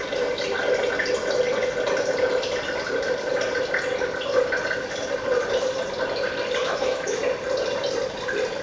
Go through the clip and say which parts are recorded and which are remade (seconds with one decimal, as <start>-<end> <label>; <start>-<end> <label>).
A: 0.0-6.6 recorded; 6.6-7.2 remade; 7.2-8.6 recorded